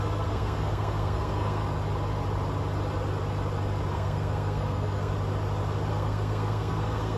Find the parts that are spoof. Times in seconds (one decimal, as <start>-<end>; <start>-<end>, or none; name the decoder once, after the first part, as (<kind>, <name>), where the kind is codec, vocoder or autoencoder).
0.0-1.6 (codec, SNAC); 3.9-5.1; 5.9-7.2